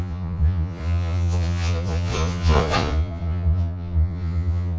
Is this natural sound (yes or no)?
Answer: no